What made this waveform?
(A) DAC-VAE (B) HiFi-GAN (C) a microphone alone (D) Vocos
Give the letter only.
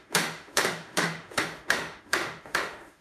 A